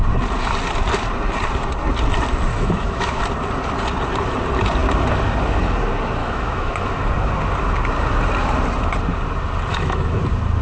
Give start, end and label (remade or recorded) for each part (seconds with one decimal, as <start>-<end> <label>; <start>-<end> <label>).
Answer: 0.0-2.5 recorded; 2.5-3.2 remade; 3.2-6.2 recorded; 6.2-7.1 remade; 7.1-9.7 recorded; 9.7-10.2 remade; 10.2-10.6 recorded